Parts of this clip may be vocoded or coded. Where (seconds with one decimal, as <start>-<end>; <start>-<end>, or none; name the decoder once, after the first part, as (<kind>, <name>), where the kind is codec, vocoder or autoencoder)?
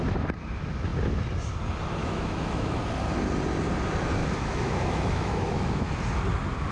2.0-2.8 (autoencoder, DAC-VAE); 4.2-5.9